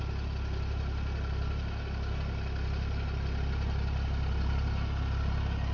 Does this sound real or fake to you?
real